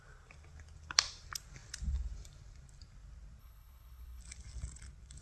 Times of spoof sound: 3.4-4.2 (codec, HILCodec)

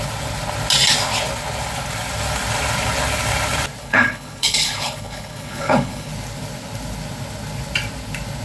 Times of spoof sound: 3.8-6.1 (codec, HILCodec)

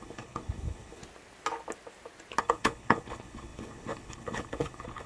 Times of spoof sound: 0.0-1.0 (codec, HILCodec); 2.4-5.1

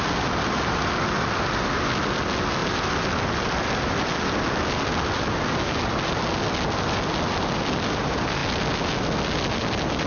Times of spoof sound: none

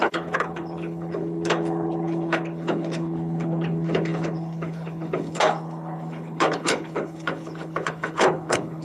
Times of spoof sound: 0.0-8.8 (codec, HILCodec)